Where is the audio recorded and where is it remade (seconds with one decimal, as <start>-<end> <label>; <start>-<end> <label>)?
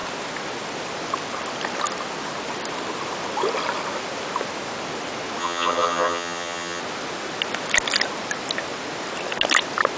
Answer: 0.0-5.4 recorded; 5.4-6.8 remade; 6.8-10.0 recorded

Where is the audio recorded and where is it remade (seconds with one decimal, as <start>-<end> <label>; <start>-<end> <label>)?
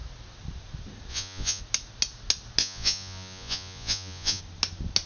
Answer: 0.0-1.1 recorded; 1.1-1.6 remade; 1.6-2.6 recorded; 2.6-4.4 remade; 4.4-5.1 recorded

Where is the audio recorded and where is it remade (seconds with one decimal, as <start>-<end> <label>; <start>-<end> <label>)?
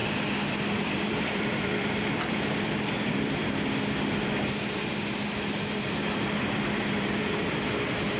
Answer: 0.0-0.7 recorded; 0.7-3.4 remade; 3.4-7.0 recorded; 7.0-8.2 remade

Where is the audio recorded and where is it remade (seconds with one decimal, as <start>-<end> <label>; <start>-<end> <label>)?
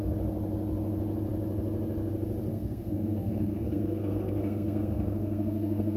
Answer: 0.0-2.5 recorded; 2.5-6.0 remade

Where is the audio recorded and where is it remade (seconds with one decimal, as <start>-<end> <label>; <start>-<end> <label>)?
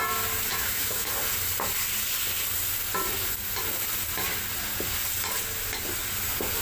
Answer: 0.0-0.5 recorded; 0.5-1.1 remade; 1.1-6.6 recorded